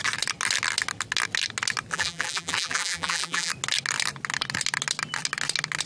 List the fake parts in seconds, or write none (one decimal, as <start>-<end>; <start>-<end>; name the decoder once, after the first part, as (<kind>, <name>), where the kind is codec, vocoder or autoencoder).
1.9-3.5 (vocoder, BigVGAN v2)